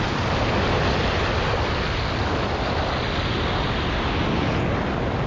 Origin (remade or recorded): recorded